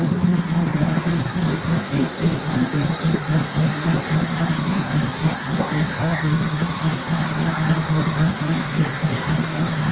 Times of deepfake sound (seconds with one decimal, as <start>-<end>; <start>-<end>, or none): 0.0-9.9